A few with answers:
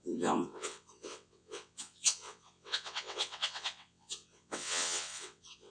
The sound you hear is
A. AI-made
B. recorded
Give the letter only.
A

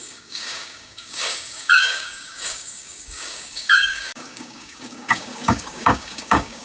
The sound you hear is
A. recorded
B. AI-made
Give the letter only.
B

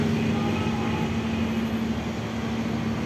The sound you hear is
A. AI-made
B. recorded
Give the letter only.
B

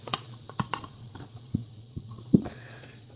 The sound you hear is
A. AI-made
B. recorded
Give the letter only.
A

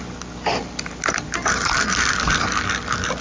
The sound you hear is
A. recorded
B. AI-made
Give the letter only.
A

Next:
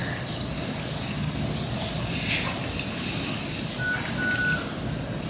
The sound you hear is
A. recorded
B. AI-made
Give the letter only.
A